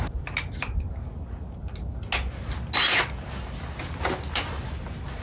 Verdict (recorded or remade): recorded